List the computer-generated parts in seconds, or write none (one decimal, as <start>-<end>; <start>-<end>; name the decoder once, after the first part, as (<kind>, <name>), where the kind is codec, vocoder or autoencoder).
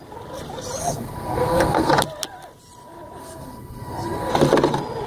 0.8-1.9 (codec, SNAC); 3.2-4.3